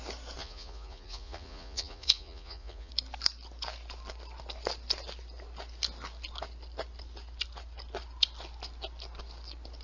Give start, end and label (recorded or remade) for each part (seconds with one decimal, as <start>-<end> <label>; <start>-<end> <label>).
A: 0.0-0.4 recorded; 0.4-2.9 remade; 2.9-9.8 recorded